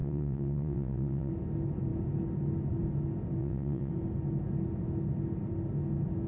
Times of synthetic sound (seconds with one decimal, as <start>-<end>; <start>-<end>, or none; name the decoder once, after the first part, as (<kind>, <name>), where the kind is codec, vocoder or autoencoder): 0.0-1.3 (vocoder, WaveNeXt); 3.4-3.9